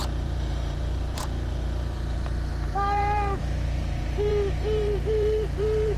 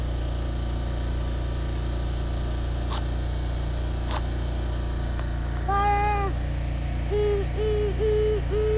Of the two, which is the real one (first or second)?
second